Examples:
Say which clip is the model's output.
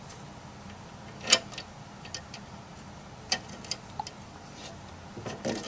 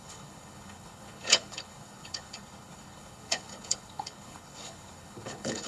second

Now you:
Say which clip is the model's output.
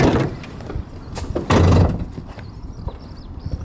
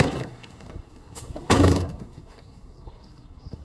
second